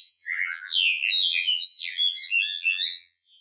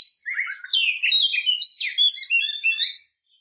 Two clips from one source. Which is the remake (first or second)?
first